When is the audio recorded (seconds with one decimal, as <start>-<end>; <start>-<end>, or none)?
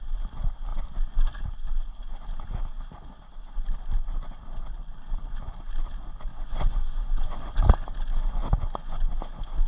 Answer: 0.0-6.3; 7.3-8.4; 9.0-9.7